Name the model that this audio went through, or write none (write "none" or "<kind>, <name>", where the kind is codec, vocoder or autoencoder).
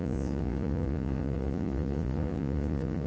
vocoder, Vocos